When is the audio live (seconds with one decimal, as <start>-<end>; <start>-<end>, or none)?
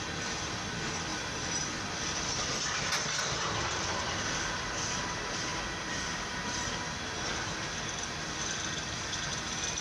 0.0-9.8